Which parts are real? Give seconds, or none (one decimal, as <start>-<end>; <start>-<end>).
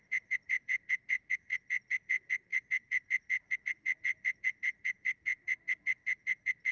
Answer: none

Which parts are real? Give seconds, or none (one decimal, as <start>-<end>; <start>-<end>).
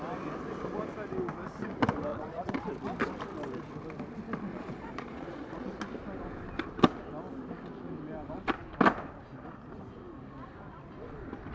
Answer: 0.0-2.1; 2.7-4.5; 5.8-11.5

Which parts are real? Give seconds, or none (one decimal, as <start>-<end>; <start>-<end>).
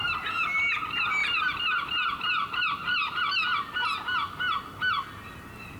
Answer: 0.0-5.8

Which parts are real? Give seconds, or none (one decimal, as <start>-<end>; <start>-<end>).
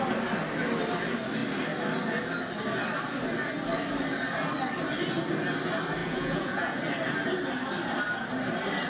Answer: 0.0-6.0; 6.8-8.9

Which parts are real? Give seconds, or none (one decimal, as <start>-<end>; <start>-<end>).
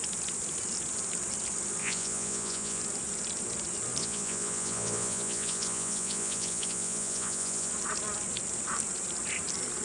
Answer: 0.0-1.8; 2.8-4.0; 7.7-9.8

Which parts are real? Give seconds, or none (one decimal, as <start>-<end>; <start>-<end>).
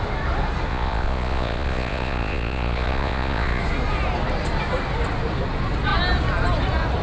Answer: 0.0-0.7; 3.6-7.0